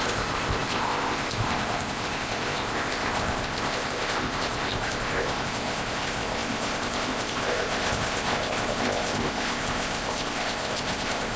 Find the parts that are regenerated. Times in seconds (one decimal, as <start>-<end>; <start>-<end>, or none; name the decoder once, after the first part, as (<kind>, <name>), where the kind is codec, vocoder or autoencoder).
0.0-11.4 (codec, ZipCodec)